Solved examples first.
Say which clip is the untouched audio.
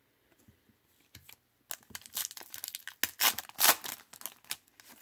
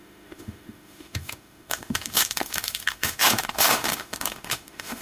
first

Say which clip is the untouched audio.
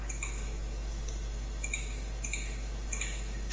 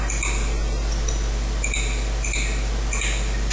second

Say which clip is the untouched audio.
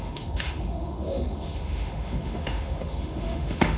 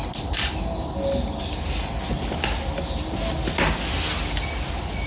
second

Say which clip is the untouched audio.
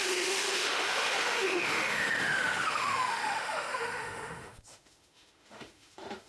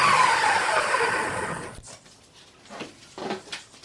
second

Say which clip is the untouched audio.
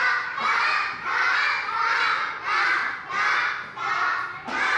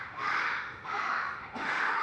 first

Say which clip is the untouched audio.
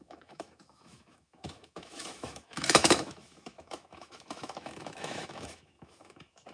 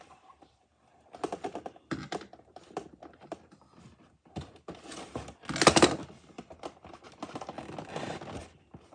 second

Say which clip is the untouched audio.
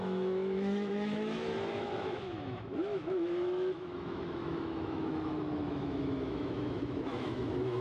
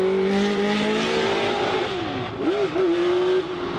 second